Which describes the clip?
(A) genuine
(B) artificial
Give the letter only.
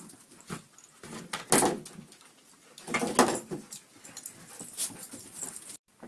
A